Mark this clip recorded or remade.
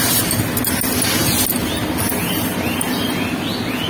recorded